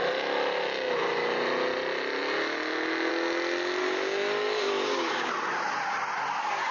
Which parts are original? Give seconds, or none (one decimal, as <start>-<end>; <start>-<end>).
0.0-3.8; 5.3-6.7